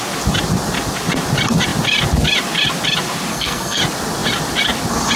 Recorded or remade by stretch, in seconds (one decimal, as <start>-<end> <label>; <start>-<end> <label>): 0.0-3.3 recorded; 3.3-3.8 remade; 3.8-5.2 recorded